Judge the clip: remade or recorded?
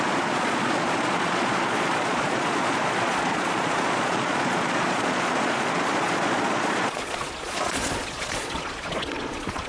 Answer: remade